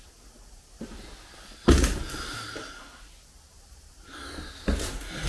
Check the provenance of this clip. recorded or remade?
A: recorded